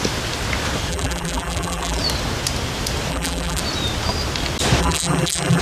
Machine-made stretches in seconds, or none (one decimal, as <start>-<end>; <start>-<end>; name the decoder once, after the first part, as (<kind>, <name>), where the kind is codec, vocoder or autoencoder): 0.9-2.0 (vocoder, BigVGAN v2); 3.1-3.6; 4.8-5.6